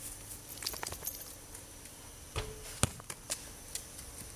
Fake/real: real